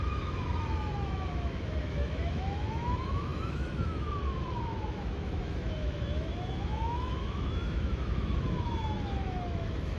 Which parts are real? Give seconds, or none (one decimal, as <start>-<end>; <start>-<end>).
none